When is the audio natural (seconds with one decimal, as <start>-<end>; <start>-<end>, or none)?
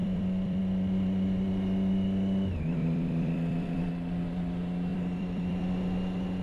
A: 0.6-2.8; 3.9-4.9; 5.6-6.4